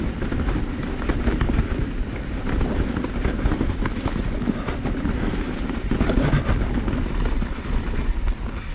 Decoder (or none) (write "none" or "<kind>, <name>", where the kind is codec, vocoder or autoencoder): none